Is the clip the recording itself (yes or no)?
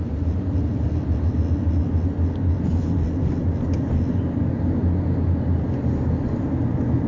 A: yes